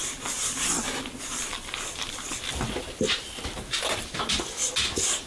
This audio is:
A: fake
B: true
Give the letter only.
B